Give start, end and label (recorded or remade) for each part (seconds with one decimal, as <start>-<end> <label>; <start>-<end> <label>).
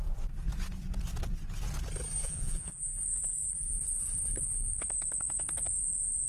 0.0-2.2 recorded; 2.2-2.8 remade; 2.8-6.3 recorded